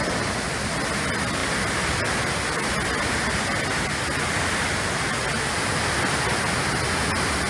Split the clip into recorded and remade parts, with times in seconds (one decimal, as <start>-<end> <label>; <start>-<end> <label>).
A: 0.0-7.5 recorded